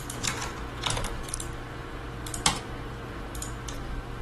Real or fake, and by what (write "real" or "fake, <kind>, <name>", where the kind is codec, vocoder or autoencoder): real